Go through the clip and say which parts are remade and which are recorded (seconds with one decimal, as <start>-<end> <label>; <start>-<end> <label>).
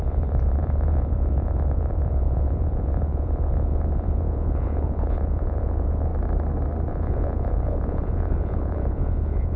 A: 0.0-6.1 remade; 6.1-6.9 recorded; 6.9-9.6 remade